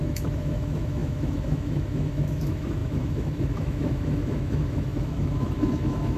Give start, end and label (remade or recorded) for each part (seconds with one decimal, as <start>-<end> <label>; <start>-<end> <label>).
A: 0.0-6.2 remade